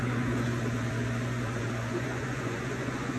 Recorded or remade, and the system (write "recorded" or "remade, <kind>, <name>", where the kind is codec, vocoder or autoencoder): remade, vocoder, Vocos